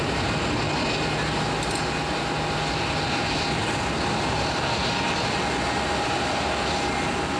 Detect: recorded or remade recorded